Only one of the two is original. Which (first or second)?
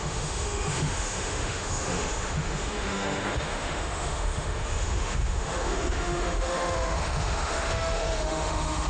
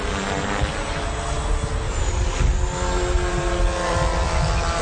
second